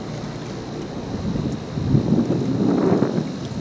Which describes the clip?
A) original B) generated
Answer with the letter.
A